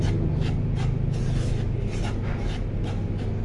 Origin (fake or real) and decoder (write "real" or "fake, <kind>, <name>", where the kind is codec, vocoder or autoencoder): real